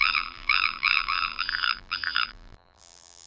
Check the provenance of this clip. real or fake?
fake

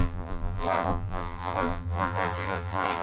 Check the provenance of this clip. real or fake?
fake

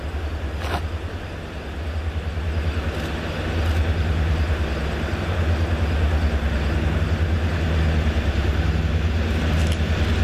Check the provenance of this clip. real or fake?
real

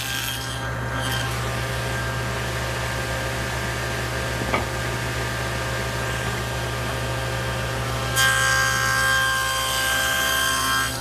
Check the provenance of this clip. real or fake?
real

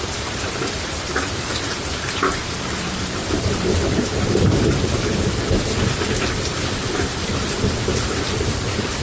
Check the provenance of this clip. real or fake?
fake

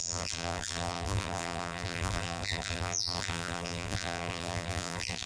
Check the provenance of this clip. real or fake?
fake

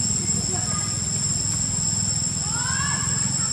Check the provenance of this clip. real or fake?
real